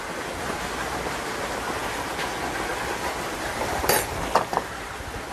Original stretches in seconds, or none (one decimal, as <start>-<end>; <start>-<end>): 0.0-1.8; 2.3-2.7; 4.7-5.3